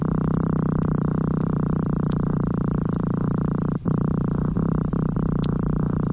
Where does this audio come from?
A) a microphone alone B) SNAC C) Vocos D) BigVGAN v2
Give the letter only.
A